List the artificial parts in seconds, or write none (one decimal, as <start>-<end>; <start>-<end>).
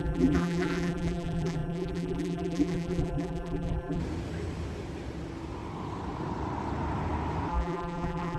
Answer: 0.0-4.0; 7.5-8.4